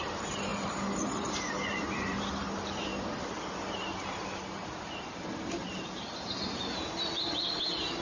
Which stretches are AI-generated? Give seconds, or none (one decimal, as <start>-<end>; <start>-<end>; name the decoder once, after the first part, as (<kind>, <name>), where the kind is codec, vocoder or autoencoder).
0.0-2.9 (vocoder, BigVGAN v2)